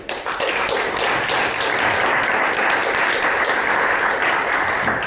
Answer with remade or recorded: recorded